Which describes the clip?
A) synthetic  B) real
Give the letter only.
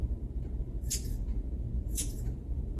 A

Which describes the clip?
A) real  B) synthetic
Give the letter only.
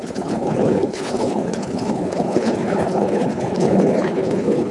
B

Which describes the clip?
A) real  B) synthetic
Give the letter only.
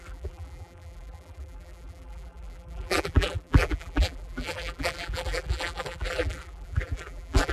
B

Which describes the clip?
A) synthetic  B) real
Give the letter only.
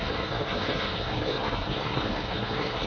A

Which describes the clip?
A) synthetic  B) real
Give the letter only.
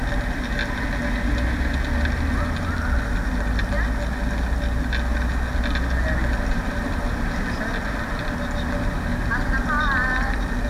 B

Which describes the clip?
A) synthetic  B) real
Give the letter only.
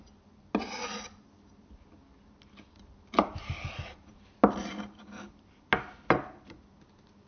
B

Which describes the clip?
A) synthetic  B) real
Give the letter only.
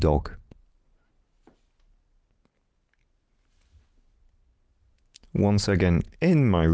B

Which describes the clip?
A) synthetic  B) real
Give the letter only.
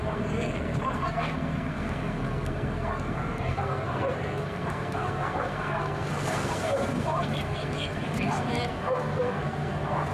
A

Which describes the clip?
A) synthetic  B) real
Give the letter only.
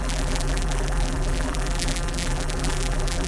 A